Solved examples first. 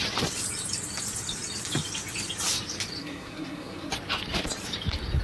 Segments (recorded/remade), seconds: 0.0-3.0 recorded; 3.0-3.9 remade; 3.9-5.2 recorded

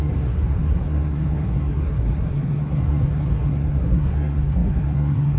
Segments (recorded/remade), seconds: 0.0-5.4 remade

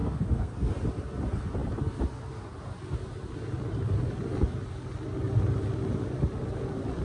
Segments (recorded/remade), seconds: 0.0-0.7 remade; 0.7-7.0 recorded

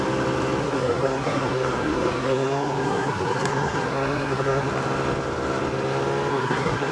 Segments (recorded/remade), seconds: 0.0-0.6 recorded; 0.6-4.7 remade; 4.7-6.3 recorded; 6.3-6.9 remade

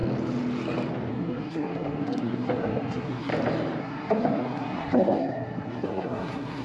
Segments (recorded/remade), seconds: 0.0-1.1 recorded; 1.1-3.3 remade; 3.3-3.8 recorded; 3.8-6.6 remade

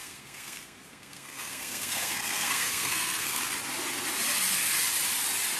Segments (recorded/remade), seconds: 0.0-3.4 remade; 3.4-5.6 recorded